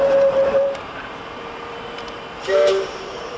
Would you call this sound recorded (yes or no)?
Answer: no